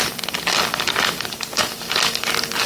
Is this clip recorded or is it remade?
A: remade